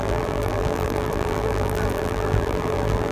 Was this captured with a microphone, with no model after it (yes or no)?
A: no